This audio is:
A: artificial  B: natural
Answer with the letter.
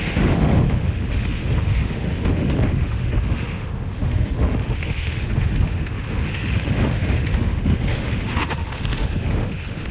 A